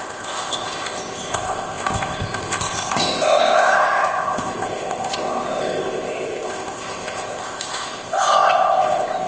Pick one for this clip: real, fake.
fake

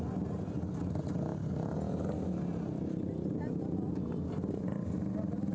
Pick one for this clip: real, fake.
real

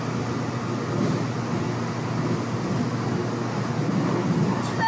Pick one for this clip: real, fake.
real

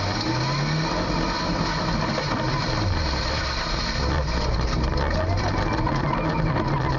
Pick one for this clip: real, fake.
real